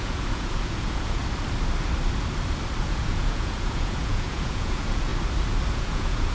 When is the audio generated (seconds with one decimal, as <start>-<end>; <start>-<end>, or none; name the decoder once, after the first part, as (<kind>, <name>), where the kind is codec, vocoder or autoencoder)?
0.0-1.2 (vocoder, Vocos); 2.8-5.1; 5.7-6.3